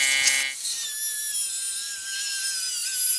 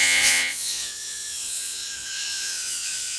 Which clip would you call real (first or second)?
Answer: first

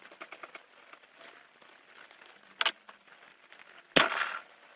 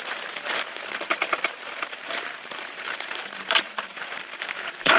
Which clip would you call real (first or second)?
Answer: first